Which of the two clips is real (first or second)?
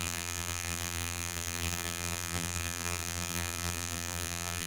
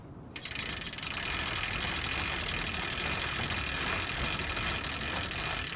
second